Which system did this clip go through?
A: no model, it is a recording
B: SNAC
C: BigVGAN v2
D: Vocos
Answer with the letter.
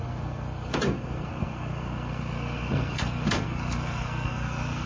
B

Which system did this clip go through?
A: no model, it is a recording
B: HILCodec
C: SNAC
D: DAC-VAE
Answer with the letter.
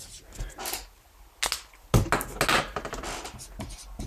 A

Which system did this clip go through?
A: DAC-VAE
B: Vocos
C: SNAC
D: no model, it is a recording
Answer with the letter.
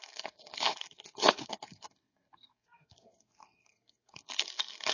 C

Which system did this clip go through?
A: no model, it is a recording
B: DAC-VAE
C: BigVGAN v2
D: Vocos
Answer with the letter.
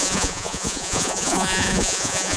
D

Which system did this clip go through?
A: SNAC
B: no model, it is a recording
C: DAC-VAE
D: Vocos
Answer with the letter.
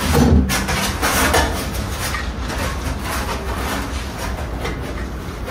B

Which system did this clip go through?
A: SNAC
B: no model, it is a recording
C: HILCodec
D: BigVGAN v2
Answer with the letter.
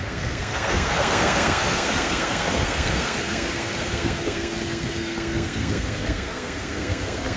A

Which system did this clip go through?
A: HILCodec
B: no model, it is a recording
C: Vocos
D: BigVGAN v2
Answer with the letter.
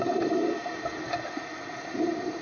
B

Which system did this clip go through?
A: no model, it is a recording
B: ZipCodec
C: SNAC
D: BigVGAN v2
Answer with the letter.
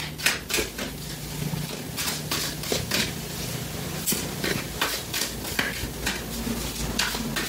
A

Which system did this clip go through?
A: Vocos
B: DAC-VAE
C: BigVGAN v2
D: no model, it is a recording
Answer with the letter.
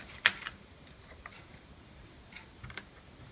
C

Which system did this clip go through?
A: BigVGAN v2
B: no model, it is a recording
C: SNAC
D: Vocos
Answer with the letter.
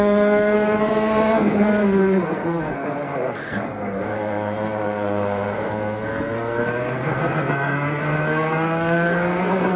C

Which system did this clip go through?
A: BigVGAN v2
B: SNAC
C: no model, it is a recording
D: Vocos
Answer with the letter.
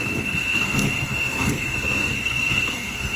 B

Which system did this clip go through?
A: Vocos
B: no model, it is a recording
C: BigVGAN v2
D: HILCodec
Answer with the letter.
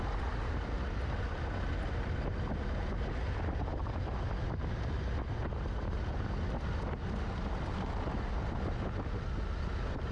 B